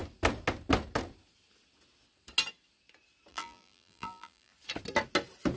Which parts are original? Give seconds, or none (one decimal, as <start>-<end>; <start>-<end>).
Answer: 0.0-3.3; 4.5-5.6